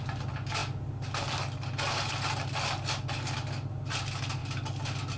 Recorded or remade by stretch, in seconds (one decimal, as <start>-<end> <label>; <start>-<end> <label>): 0.0-5.2 recorded